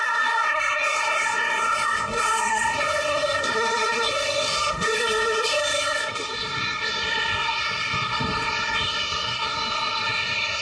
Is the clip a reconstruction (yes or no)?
yes